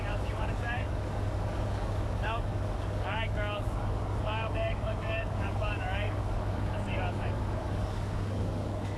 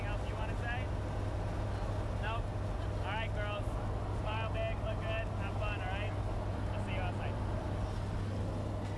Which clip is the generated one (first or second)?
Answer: first